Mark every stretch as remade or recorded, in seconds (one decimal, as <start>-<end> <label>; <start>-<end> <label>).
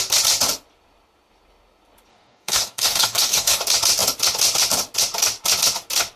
0.0-2.1 recorded; 2.1-3.6 remade; 3.6-6.2 recorded